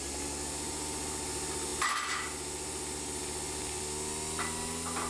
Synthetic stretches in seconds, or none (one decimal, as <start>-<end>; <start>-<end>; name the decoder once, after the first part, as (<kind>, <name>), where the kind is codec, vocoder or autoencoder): none